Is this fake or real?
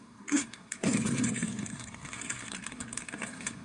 fake